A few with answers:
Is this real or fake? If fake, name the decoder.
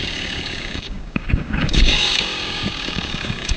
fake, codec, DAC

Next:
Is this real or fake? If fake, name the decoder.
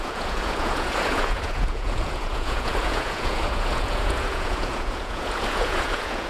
fake, vocoder, Vocos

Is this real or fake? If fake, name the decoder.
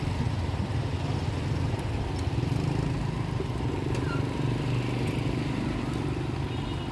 real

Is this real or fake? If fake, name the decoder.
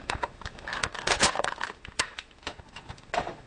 fake, autoencoder, DAC-VAE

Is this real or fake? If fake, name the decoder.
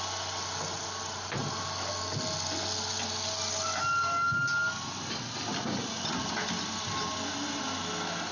real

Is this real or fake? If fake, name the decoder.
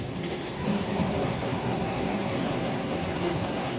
fake, codec, SNAC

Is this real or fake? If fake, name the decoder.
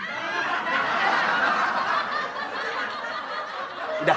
real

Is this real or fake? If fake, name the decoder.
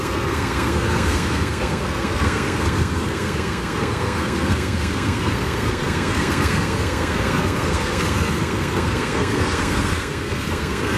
fake, codec, SNAC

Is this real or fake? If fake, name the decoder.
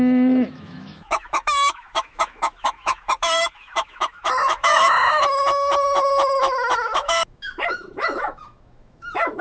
fake, autoencoder, DAC-VAE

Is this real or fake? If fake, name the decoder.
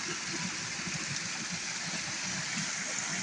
real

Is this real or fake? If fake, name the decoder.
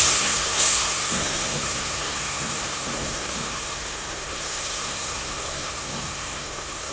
fake, codec, SNAC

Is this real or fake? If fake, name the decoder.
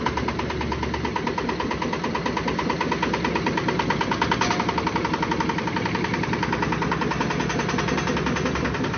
real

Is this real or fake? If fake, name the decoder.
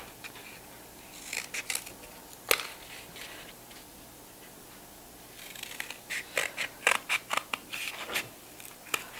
real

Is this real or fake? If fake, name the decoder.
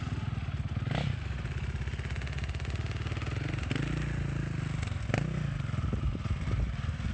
real